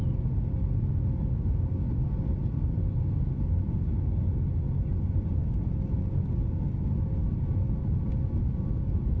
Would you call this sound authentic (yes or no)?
yes